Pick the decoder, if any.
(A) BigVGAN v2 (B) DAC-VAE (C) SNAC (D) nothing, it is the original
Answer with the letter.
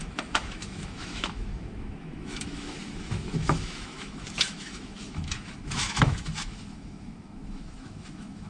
B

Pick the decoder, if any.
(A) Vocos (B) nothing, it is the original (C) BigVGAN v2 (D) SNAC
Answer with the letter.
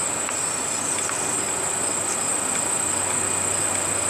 B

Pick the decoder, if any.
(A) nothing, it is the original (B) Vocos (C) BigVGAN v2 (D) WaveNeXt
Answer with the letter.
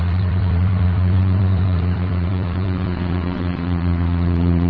D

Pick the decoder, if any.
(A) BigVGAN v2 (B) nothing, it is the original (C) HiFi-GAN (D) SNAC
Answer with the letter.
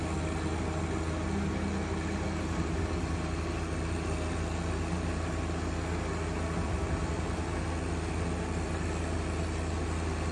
B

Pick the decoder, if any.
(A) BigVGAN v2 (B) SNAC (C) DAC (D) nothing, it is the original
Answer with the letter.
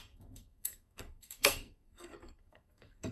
B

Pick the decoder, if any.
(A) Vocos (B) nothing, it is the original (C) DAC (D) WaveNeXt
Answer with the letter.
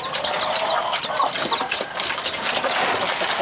B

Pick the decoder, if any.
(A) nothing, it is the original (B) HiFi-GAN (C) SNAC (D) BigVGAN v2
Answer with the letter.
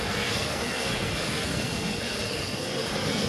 C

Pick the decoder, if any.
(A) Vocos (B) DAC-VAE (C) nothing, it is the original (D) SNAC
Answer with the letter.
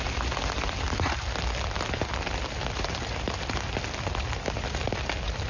C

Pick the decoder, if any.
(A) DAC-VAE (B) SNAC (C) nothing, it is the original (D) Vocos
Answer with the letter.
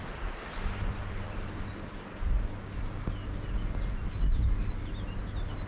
C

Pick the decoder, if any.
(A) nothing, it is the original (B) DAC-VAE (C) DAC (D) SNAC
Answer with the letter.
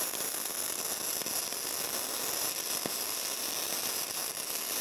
A